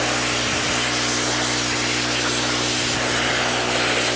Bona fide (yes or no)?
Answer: yes